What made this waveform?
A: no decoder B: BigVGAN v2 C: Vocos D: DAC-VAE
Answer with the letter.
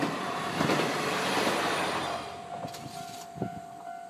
B